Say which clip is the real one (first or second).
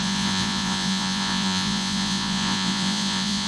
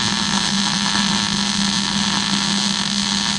second